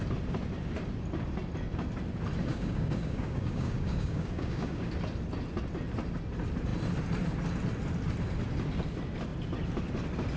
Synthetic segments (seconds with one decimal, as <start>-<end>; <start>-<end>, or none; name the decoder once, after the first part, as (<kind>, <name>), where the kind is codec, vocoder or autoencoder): 2.5-4.9 (codec, DAC)